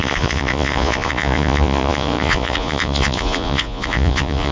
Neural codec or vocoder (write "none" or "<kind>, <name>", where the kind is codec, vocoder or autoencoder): vocoder, Vocos